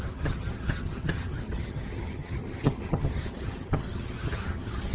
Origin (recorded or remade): remade